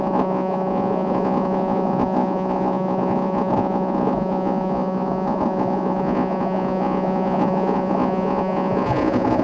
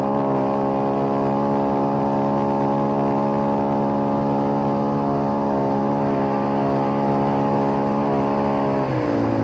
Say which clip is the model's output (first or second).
first